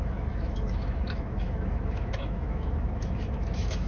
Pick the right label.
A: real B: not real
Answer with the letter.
B